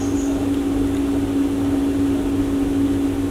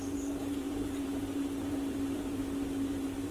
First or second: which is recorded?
first